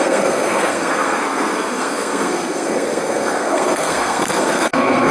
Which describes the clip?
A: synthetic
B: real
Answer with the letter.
A